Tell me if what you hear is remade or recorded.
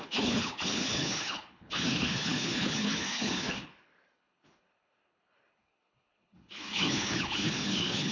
remade